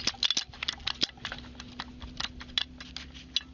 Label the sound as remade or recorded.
recorded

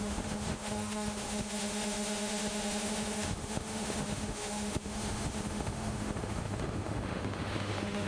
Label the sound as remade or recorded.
remade